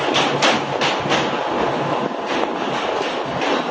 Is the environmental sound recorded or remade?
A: recorded